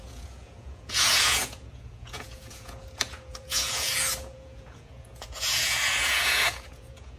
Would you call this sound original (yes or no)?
no